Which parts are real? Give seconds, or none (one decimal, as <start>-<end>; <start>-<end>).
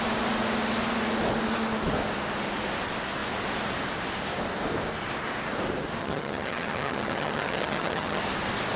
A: 0.0-6.0; 8.2-8.8